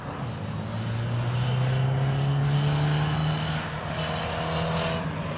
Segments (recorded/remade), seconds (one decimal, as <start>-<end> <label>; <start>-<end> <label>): 0.0-5.4 recorded